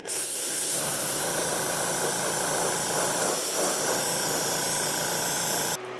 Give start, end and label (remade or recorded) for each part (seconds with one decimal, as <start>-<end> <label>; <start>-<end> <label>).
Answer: 0.0-1.2 remade; 1.2-6.0 recorded